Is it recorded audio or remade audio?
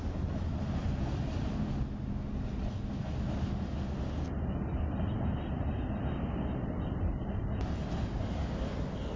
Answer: recorded